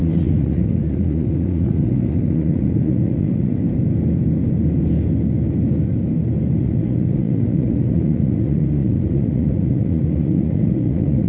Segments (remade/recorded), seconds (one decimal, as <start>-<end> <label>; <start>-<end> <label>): 0.0-3.6 remade; 3.6-6.6 recorded; 6.6-11.3 remade